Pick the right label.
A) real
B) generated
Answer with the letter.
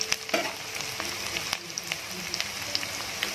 A